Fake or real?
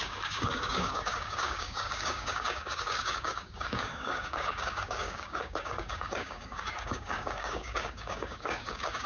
fake